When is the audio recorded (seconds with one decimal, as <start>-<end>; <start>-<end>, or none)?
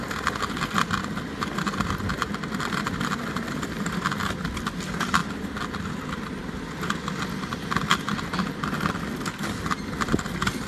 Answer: 0.0-5.2; 5.9-10.7